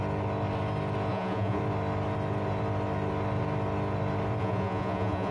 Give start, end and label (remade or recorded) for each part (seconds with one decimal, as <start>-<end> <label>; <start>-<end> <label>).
0.0-1.1 recorded; 1.1-1.6 remade; 1.6-4.4 recorded; 4.4-5.3 remade

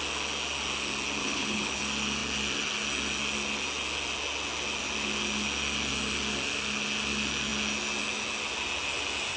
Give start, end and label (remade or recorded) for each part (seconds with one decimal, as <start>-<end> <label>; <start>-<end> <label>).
0.0-1.2 recorded; 1.2-1.8 remade; 1.8-9.4 recorded

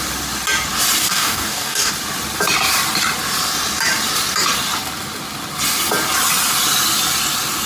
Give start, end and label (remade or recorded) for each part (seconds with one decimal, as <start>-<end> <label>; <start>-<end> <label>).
0.0-1.0 recorded; 1.0-1.9 remade; 1.9-7.7 recorded

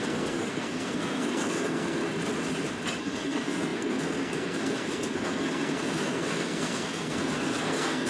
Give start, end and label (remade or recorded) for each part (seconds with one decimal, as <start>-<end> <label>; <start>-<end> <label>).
0.0-2.0 remade; 2.0-3.0 recorded; 3.0-8.1 remade